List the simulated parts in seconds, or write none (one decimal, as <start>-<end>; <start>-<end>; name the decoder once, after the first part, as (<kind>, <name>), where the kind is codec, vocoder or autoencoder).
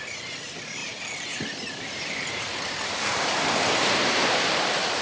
0.0-5.0 (vocoder, BigVGAN v2)